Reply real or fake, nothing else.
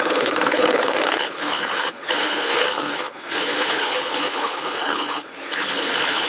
fake